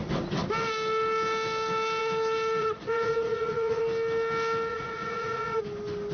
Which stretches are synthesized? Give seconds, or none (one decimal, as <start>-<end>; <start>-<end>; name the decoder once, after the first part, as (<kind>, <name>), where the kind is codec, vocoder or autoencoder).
2.6-3.8 (vocoder, Vocos); 4.7-5.6